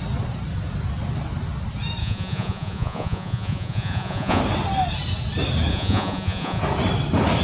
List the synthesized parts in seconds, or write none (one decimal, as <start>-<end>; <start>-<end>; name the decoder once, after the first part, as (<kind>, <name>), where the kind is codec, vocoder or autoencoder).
2.0-4.4 (vocoder, Vocos); 5.7-6.6